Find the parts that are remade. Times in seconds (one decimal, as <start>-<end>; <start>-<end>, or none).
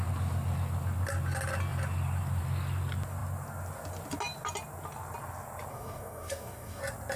5.7-6.8